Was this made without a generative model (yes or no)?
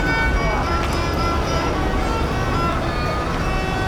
yes